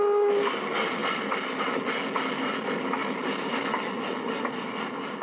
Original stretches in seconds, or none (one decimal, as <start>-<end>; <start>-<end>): 0.0-5.2